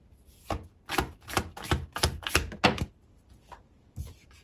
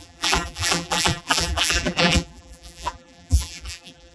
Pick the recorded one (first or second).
first